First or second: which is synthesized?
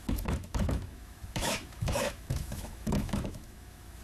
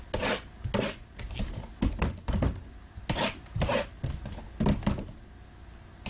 first